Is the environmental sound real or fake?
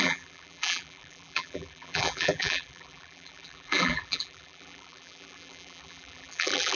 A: fake